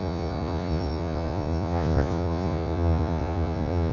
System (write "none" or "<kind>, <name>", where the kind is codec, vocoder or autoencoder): vocoder, Vocos